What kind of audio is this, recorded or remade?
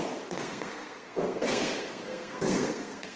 remade